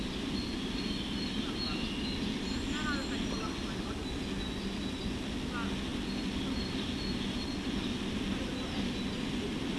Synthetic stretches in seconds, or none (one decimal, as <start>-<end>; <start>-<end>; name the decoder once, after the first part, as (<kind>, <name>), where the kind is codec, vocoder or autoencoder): none